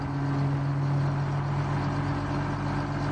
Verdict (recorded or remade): recorded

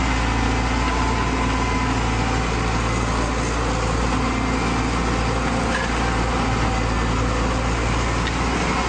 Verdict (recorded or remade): recorded